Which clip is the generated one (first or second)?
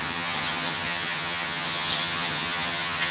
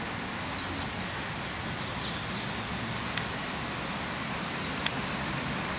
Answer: first